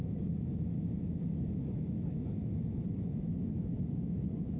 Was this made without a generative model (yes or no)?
no